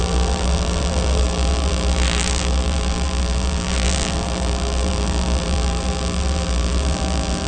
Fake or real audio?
fake